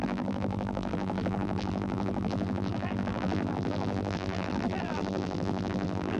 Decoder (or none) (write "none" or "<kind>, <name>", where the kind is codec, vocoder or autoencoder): vocoder, BigVGAN v2